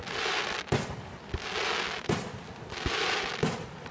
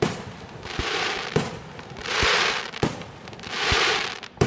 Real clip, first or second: first